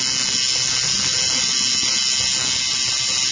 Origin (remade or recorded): recorded